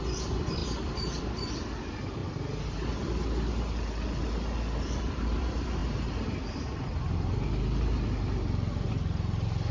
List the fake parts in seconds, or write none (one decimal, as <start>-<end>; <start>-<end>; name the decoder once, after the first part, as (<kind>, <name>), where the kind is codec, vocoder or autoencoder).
0.0-5.8 (vocoder, BigVGAN v2); 8.9-9.7